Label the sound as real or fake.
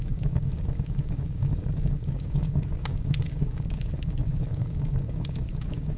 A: fake